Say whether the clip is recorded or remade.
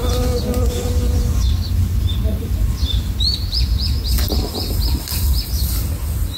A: recorded